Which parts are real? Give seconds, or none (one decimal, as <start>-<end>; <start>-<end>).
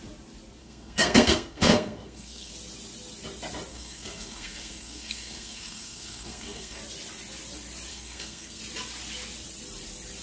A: 0.0-0.6; 2.5-3.7; 6.8-7.9; 8.6-10.2